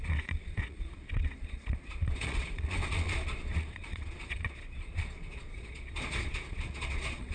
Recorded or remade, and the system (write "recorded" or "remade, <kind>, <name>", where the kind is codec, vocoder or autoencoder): remade, vocoder, Vocos